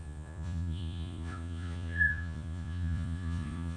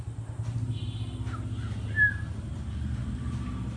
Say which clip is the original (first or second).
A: second